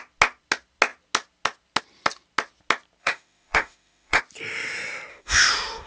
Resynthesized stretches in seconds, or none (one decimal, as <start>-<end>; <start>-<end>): 3.0-4.2; 5.1-5.9